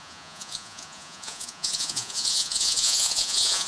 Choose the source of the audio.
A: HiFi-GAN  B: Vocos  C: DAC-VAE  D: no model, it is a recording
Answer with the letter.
B